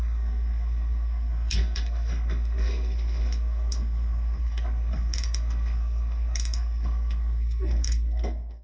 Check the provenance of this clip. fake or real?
fake